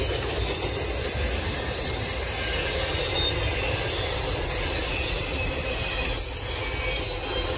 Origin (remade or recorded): recorded